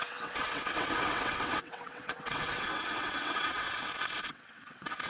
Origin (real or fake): fake